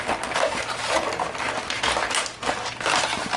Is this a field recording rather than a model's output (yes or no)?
yes